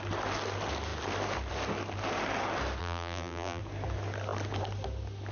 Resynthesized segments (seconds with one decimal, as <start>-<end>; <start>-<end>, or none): 2.8-3.6